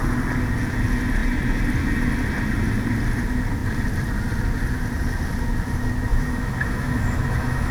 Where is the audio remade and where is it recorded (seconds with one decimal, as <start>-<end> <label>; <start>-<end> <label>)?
0.0-6.1 recorded; 6.1-7.7 remade